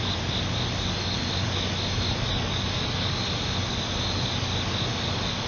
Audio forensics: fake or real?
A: real